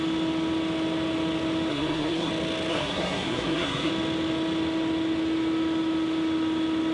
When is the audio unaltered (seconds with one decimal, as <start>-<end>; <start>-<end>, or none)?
0.0-1.7; 2.3-2.7; 3.9-6.9